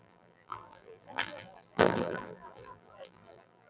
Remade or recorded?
remade